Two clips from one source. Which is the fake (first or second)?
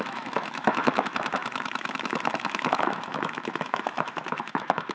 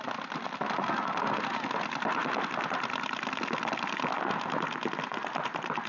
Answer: first